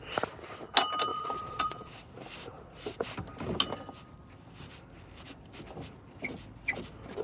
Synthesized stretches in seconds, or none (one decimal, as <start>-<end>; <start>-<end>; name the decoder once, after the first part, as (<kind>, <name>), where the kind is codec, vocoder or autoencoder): 1.1-1.9 (vocoder, Vocos)